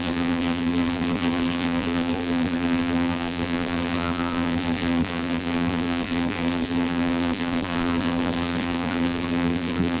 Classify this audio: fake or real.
fake